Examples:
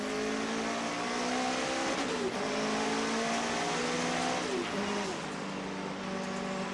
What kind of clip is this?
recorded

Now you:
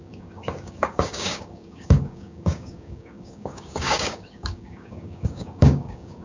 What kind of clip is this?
remade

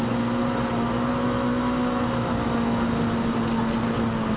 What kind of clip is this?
recorded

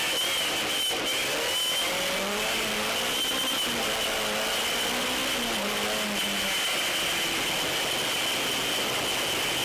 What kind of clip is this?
recorded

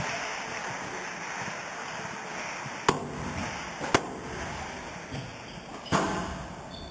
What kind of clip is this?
recorded